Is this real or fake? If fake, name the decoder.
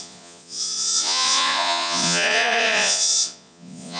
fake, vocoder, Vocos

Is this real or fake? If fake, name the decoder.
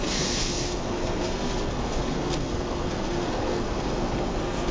fake, codec, SNAC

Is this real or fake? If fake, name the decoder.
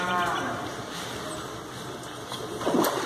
real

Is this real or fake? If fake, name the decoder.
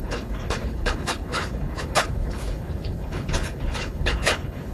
fake, codec, HILCodec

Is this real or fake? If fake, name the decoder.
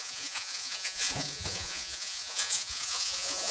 fake, vocoder, Vocos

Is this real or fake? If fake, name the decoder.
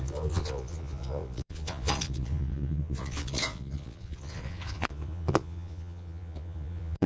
fake, vocoder, Vocos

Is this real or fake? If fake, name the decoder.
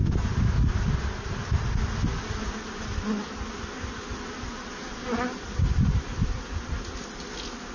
real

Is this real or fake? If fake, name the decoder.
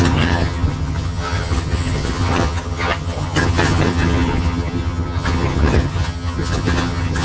fake, vocoder, HiFi-GAN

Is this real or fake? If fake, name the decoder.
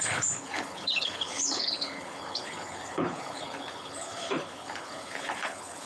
fake, codec, HILCodec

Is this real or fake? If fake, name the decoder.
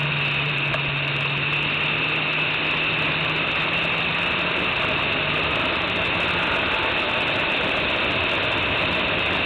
real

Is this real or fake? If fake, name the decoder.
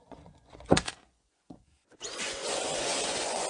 fake, vocoder, Vocos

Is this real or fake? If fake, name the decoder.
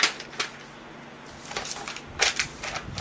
real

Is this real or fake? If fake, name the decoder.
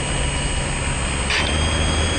real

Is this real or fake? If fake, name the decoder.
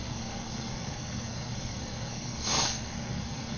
fake, codec, SNAC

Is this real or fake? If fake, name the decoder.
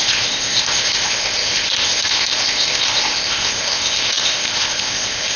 fake, codec, ZipCodec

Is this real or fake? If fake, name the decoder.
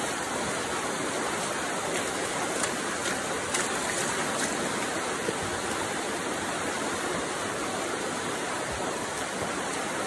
real